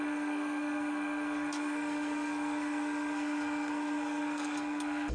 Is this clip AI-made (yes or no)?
yes